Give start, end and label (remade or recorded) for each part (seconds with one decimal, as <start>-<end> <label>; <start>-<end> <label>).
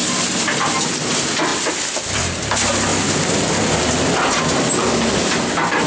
0.0-5.9 recorded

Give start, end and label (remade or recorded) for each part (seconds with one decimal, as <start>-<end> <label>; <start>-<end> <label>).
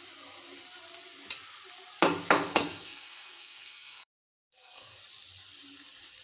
0.0-2.5 recorded; 2.5-5.0 remade; 5.0-6.2 recorded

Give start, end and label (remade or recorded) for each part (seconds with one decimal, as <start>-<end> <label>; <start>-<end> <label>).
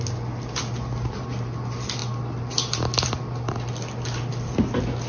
0.0-5.1 recorded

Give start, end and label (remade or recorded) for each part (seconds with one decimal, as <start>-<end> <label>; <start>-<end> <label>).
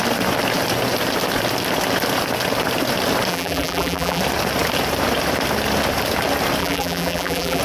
0.0-3.3 recorded; 3.3-4.2 remade; 4.2-6.6 recorded; 6.6-7.6 remade